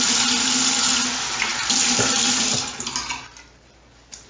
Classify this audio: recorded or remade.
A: recorded